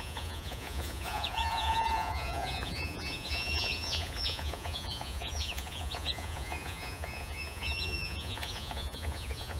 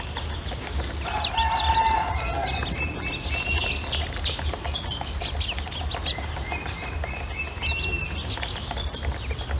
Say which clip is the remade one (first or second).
first